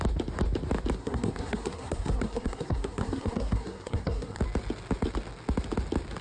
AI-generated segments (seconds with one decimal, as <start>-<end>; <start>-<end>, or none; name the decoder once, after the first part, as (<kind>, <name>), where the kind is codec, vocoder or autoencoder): 1.0-4.4 (codec, SNAC)